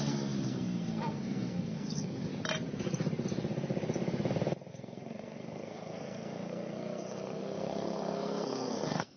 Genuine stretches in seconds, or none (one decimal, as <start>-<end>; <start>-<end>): 2.3-4.7